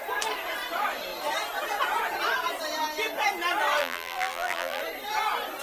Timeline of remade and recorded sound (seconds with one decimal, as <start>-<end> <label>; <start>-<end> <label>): 0.0-3.8 recorded; 3.8-4.8 remade; 4.8-5.6 recorded